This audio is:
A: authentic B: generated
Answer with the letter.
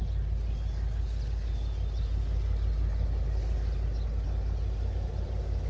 A